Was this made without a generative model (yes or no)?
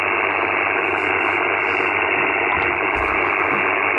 yes